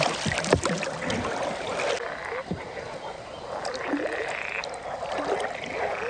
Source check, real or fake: real